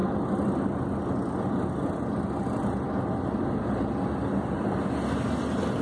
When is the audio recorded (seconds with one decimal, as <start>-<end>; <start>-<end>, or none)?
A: 0.0-5.8